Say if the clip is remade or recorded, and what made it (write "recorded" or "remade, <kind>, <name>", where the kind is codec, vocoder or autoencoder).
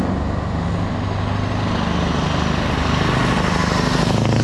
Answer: recorded